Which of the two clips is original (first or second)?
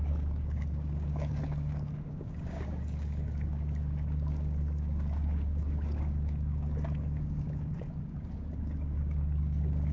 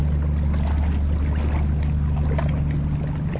second